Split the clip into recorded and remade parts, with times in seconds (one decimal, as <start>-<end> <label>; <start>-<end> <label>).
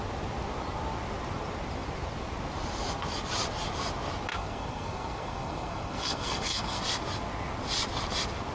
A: 0.0-4.3 recorded; 4.3-6.8 remade; 6.8-8.5 recorded